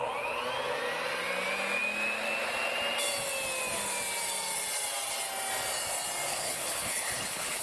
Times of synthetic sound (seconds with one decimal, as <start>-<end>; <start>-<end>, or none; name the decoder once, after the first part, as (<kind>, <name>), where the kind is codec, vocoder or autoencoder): 6.3-7.6 (codec, HILCodec)